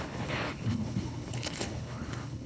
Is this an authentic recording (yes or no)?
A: no